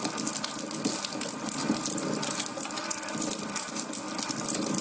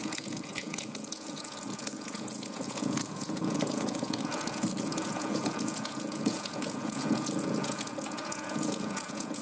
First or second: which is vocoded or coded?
second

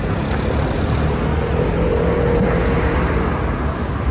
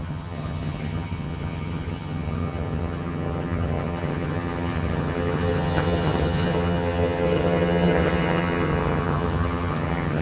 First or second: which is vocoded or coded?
second